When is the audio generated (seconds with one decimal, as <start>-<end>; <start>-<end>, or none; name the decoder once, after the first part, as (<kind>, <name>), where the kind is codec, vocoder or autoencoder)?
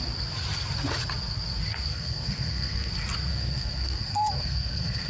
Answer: 1.9-2.9 (codec, SNAC); 3.3-5.1